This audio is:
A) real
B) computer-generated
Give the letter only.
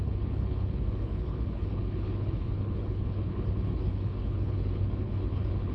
B